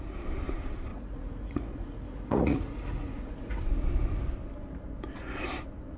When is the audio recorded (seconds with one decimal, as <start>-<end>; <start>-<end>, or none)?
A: 0.0-0.9; 3.6-6.0